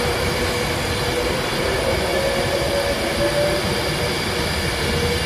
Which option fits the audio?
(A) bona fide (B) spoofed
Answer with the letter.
A